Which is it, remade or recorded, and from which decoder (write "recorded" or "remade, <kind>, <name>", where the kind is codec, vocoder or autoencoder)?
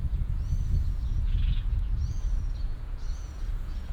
remade, vocoder, Vocos